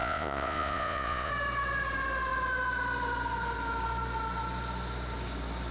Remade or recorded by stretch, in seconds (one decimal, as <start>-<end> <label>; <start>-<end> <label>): 0.0-1.3 remade; 1.3-5.7 recorded